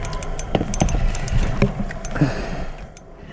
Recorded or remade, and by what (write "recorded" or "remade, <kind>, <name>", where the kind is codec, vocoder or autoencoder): recorded